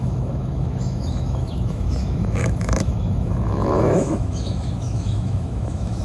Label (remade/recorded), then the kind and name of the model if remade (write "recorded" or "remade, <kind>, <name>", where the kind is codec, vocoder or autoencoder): remade, autoencoder, DAC-VAE